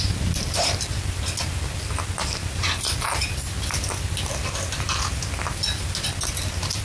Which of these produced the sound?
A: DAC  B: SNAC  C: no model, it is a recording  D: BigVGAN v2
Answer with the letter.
C